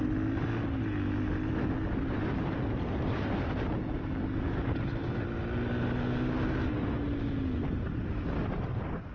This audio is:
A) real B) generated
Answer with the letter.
A